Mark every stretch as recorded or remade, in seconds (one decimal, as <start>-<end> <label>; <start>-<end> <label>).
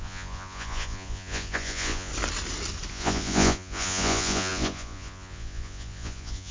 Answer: 0.0-2.1 remade; 2.1-2.9 recorded; 2.9-6.5 remade